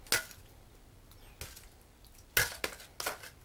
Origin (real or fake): real